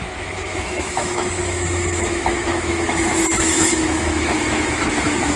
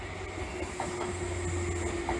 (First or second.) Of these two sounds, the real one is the second